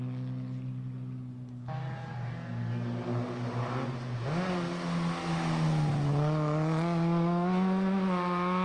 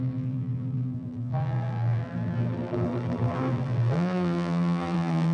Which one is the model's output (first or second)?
second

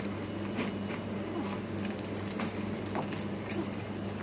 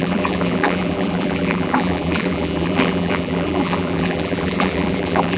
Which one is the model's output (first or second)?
second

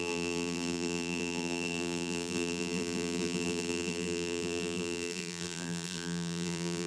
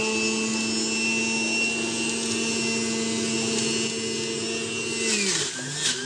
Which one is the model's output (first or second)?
first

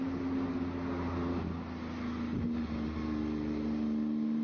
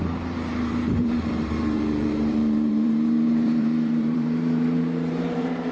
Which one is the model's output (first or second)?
second